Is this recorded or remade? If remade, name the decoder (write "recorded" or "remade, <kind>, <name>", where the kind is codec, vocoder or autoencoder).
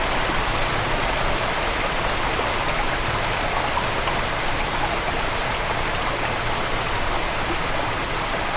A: recorded